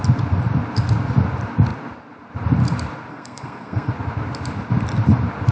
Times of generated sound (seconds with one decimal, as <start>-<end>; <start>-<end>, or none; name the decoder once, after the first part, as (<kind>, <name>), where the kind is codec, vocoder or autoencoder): 3.1-3.9 (codec, SNAC)